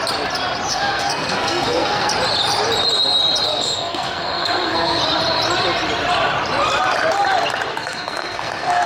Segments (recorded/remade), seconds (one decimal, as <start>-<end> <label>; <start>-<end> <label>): 0.0-0.7 recorded; 0.7-2.1 remade; 2.1-3.5 recorded; 3.5-5.0 remade; 5.0-7.7 recorded; 7.7-8.9 remade